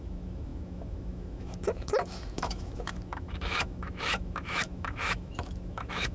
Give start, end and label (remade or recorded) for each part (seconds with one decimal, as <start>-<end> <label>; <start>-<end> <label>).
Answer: 0.0-6.1 remade